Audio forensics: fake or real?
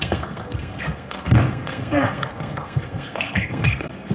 fake